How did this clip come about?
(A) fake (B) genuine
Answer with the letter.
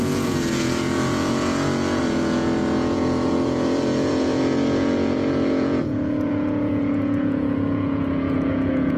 A